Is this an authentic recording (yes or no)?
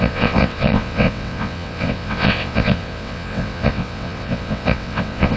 no